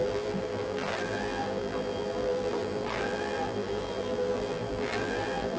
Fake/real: fake